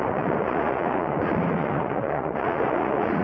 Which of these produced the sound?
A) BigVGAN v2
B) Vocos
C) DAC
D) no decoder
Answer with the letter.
B